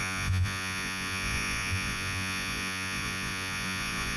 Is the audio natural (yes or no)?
no